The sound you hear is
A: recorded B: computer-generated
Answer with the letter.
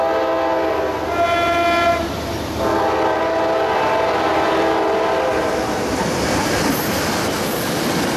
A